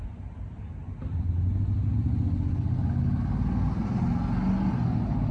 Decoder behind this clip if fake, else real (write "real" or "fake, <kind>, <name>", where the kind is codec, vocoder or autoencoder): real